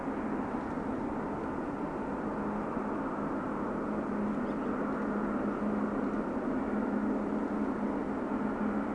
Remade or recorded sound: recorded